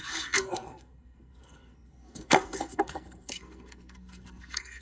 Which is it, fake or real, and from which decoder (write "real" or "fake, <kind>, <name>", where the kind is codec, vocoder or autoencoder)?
fake, codec, SNAC